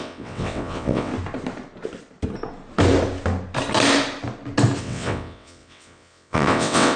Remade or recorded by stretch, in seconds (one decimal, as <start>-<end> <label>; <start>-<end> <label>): 0.0-1.1 remade; 1.1-4.8 recorded; 4.8-7.0 remade